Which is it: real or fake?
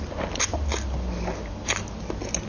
real